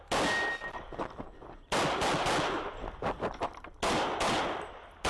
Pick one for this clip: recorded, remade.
recorded